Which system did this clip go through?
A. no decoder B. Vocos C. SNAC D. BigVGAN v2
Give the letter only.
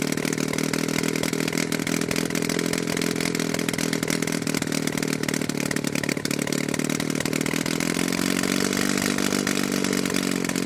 A